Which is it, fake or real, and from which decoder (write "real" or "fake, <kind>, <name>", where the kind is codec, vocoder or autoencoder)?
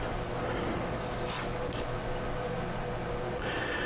real